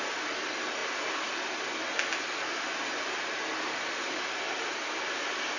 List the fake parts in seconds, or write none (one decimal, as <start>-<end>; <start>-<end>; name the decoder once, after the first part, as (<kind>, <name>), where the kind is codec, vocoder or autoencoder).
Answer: none